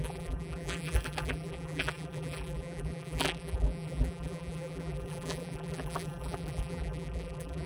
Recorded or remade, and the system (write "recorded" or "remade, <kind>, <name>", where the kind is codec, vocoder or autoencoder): remade, vocoder, BigVGAN v2